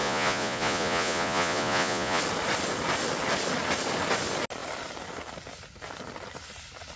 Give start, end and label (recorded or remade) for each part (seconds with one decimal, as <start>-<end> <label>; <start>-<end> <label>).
0.0-2.2 remade; 2.2-7.0 recorded